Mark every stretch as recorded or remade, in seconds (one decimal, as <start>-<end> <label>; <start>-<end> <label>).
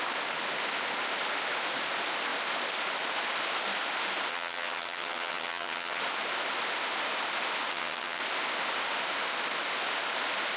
0.0-4.3 recorded; 4.3-6.0 remade; 6.0-7.7 recorded; 7.7-8.2 remade; 8.2-10.6 recorded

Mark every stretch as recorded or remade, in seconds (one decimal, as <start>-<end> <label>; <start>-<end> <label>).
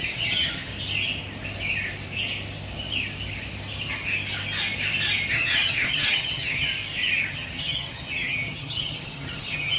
0.0-0.7 remade; 0.7-5.3 recorded; 5.3-6.7 remade; 6.7-7.3 recorded; 7.3-9.8 remade